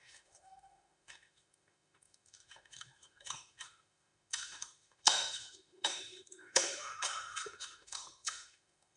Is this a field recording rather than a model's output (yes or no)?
no